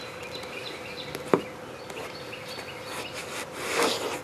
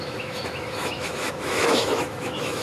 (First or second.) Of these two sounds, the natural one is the first